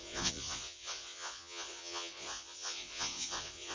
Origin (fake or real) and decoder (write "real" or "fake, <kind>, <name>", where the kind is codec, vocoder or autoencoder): fake, vocoder, Vocos